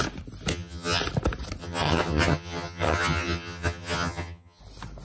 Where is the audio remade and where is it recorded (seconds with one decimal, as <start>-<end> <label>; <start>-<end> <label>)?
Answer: 0.0-0.5 recorded; 0.5-1.0 remade; 1.0-1.6 recorded; 1.6-4.6 remade; 4.6-5.0 recorded